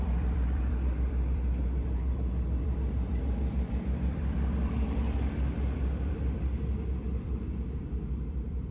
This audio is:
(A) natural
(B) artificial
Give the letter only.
B